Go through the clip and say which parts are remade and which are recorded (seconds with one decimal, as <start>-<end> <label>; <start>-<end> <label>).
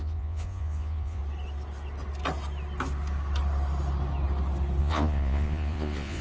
0.0-1.2 remade; 1.2-4.8 recorded; 4.8-6.2 remade